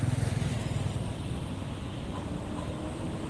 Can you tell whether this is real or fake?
real